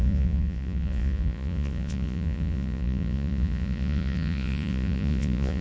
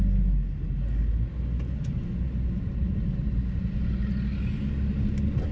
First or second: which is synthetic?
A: first